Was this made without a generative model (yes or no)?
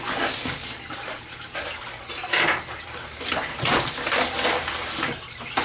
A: no